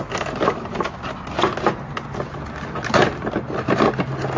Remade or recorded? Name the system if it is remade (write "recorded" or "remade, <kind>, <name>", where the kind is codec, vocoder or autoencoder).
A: recorded